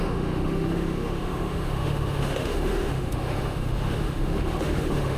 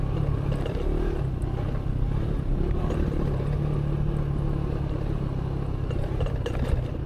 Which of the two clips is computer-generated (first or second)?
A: first